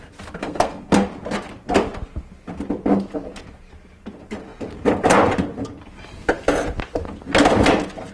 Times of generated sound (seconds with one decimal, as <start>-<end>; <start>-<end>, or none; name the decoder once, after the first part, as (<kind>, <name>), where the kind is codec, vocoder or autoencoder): 0.4-1.1 (codec, SNAC)